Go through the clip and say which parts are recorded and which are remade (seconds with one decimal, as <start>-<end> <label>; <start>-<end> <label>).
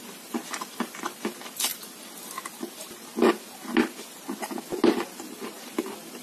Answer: 0.0-6.2 recorded